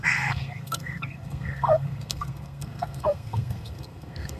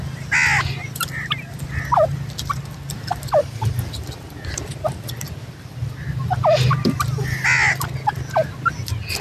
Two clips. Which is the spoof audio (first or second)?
first